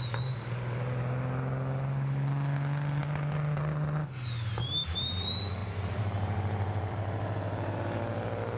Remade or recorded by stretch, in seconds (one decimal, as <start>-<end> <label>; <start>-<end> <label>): 0.0-5.6 recorded; 5.6-7.8 remade; 7.8-8.6 recorded

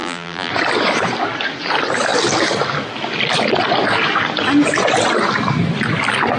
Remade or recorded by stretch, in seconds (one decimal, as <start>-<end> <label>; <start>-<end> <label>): 0.0-0.5 remade; 0.5-6.4 recorded

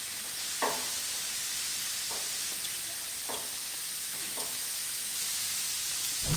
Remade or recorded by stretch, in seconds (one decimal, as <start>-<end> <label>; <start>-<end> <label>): 0.0-3.6 recorded; 3.6-5.1 remade; 5.1-6.4 recorded

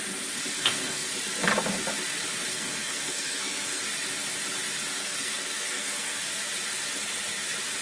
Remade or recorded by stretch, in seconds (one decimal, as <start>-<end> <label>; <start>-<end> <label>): 0.0-0.5 recorded; 0.5-1.1 remade; 1.1-2.5 recorded; 2.5-3.8 remade; 3.8-5.0 recorded; 5.0-6.2 remade; 6.2-7.8 recorded

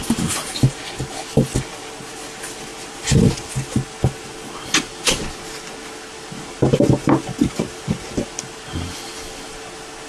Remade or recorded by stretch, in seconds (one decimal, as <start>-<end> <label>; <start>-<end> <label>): 0.0-10.1 recorded